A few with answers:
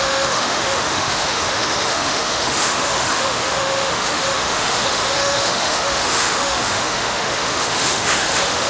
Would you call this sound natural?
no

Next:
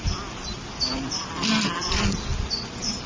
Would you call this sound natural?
yes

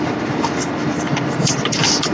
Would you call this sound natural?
no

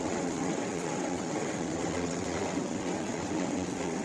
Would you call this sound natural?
no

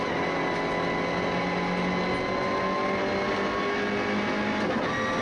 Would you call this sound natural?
yes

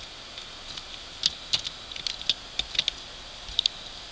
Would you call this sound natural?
yes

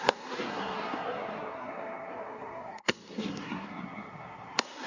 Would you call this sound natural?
no